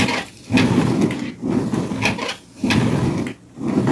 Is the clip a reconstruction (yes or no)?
no